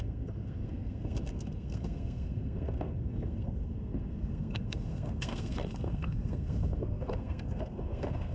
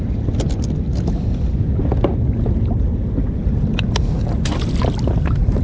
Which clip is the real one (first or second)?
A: second